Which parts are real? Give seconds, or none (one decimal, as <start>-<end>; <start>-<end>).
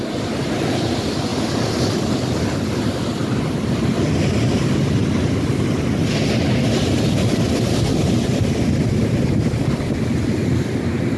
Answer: 0.0-1.3; 5.8-7.9; 10.0-11.2